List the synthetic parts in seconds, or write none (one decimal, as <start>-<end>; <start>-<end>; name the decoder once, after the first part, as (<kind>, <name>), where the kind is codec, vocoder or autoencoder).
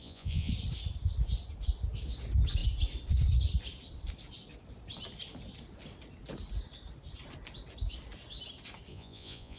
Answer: 0.0-0.5 (vocoder, Vocos); 8.9-9.6